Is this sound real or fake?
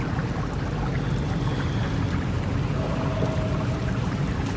real